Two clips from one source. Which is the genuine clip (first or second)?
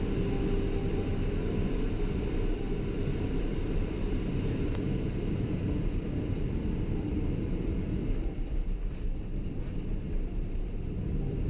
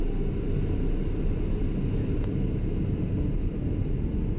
second